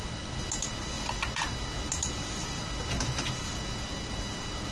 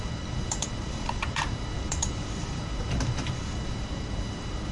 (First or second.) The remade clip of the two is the second